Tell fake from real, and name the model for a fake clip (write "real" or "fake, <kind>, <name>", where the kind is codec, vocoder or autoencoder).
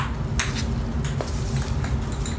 real